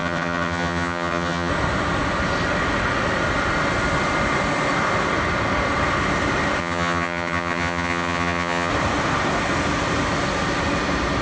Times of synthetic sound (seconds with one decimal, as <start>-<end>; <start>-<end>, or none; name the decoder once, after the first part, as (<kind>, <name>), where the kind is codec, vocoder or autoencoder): 0.0-1.5 (vocoder, HiFi-GAN); 6.6-8.7